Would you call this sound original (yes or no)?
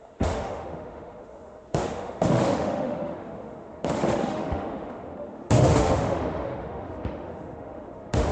no